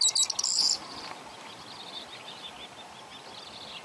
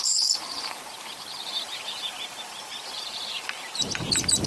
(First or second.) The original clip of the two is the first